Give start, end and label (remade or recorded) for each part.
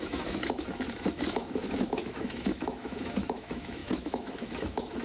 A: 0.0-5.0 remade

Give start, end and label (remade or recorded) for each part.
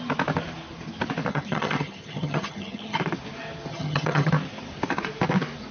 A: 0.0-1.3 recorded; 1.3-3.0 remade; 3.0-3.7 recorded; 3.7-4.3 remade; 4.3-5.7 recorded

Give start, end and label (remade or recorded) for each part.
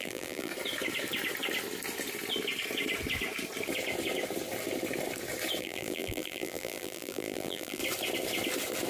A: 0.0-0.5 remade; 0.5-5.6 recorded; 5.6-7.8 remade; 7.8-8.9 recorded